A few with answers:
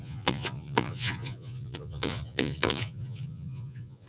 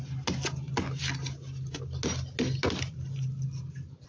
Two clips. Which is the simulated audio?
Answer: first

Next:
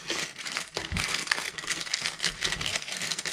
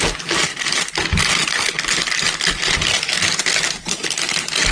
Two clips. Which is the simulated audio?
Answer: first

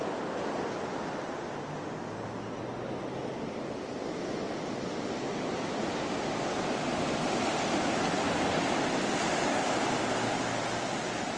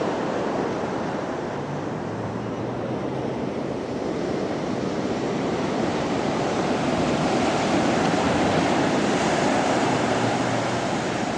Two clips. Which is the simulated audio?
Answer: second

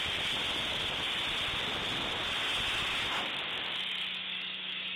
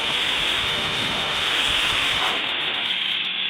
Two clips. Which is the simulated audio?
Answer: second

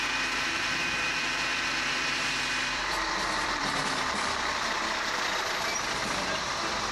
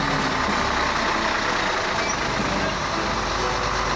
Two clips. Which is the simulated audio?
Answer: first